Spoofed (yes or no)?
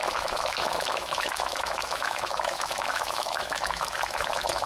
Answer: yes